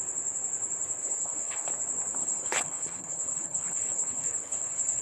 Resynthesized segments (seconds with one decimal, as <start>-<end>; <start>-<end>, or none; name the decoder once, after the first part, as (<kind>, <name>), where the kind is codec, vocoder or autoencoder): 1.0-1.7 (codec, HILCodec); 2.2-5.0